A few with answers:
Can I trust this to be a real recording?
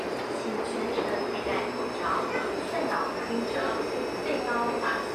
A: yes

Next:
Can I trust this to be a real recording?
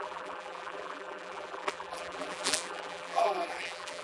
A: no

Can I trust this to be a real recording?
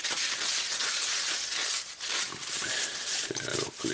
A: no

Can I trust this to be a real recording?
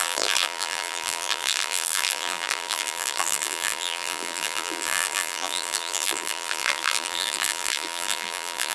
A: no